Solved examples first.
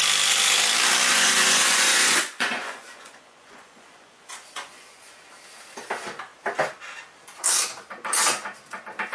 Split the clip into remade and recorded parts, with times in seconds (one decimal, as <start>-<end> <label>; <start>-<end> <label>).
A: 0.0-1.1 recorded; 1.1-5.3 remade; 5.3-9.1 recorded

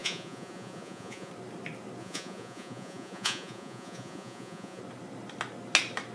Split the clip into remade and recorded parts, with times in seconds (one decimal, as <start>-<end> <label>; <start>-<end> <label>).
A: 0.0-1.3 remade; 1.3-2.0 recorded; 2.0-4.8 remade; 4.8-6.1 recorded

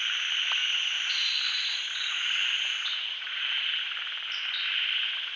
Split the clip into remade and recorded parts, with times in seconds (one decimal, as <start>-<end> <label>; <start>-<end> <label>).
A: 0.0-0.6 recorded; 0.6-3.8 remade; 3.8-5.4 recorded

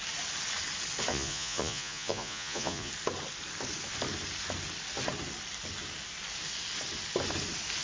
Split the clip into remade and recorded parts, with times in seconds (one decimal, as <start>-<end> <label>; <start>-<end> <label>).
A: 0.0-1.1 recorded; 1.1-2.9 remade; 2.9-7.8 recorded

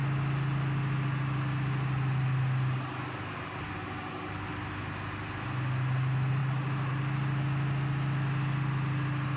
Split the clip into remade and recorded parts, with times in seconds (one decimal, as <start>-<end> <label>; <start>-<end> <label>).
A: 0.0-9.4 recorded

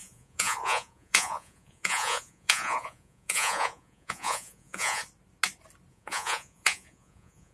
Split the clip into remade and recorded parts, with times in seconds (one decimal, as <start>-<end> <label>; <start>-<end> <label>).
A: 0.0-5.0 remade; 5.0-5.9 recorded; 5.9-7.5 remade

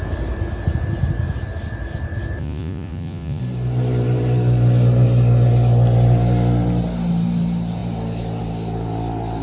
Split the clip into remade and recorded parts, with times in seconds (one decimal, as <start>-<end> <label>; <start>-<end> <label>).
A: 0.0-2.4 recorded; 2.4-3.4 remade; 3.4-9.4 recorded